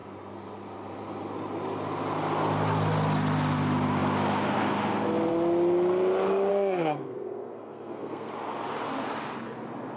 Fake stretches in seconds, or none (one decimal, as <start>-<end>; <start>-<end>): 6.5-8.3